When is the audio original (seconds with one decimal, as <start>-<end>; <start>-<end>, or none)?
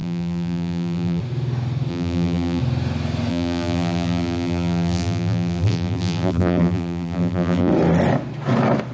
1.2-1.9; 2.6-3.3; 7.7-8.9